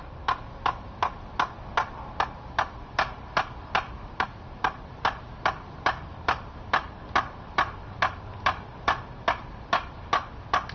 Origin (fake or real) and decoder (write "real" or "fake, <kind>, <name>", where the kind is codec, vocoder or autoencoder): real